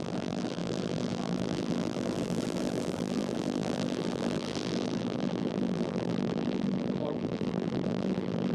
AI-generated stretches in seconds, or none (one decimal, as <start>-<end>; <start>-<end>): 0.0-8.5